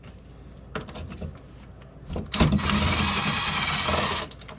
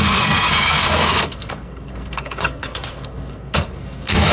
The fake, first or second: second